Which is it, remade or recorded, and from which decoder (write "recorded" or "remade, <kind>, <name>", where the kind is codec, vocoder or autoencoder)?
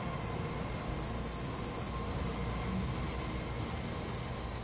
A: recorded